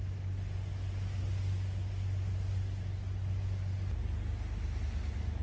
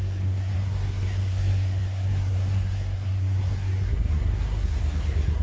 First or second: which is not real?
second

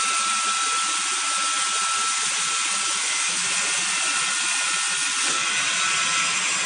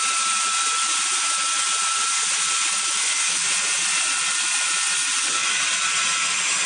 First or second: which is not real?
second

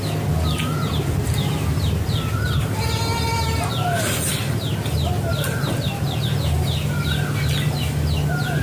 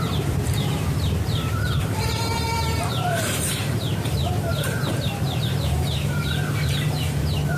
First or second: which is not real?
second